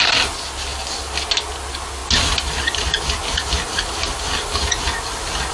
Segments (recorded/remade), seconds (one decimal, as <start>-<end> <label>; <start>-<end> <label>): 0.0-5.5 recorded